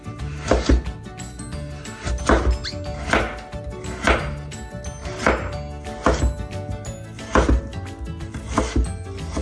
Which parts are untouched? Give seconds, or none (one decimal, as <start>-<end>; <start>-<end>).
0.0-9.4